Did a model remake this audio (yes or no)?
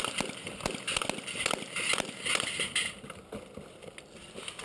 no